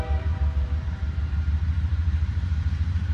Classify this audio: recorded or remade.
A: remade